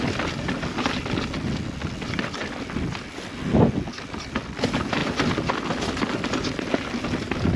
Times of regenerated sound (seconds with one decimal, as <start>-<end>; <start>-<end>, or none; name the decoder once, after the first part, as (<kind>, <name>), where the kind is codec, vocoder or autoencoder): none